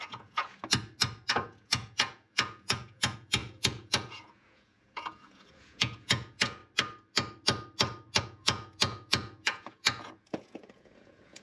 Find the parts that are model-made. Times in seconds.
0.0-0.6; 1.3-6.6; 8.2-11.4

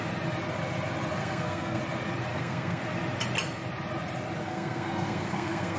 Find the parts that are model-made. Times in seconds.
1.2-1.8; 2.3-2.8; 4.4-5.8

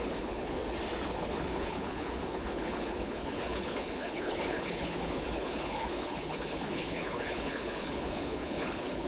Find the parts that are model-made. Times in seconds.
0.0-0.6; 1.1-9.1

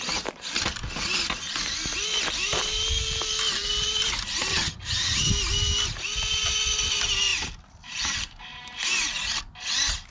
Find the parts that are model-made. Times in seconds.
4.5-5.3

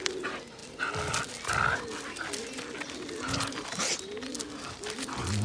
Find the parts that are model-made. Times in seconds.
none

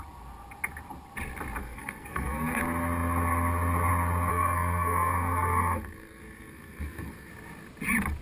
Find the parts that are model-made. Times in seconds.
1.6-2.6; 4.3-7.3

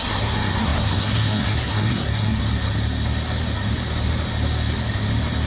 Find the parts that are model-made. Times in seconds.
0.0-2.4

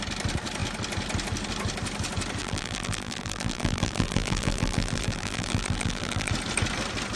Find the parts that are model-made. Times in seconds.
2.4-6.3